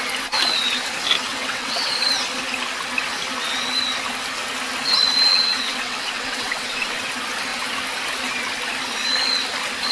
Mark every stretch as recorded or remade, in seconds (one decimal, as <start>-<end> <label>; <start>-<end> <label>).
0.0-1.3 recorded; 1.3-1.9 remade; 1.9-5.3 recorded; 5.3-7.0 remade; 7.0-9.9 recorded